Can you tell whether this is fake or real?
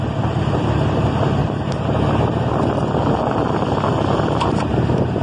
real